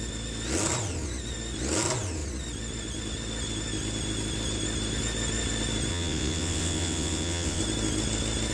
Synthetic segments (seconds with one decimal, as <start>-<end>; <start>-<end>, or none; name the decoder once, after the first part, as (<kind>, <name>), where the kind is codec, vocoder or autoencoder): 5.9-7.6 (vocoder, WaveNeXt)